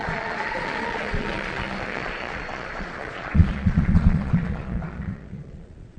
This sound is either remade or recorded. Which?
remade